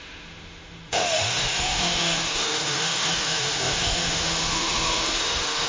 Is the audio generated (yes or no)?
yes